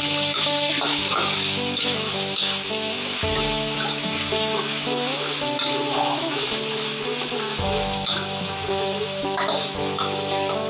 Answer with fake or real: fake